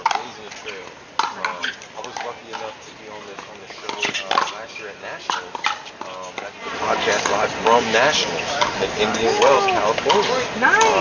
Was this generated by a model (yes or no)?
no